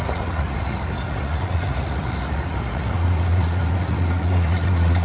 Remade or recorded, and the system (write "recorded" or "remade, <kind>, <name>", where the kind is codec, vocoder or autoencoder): remade, vocoder, Vocos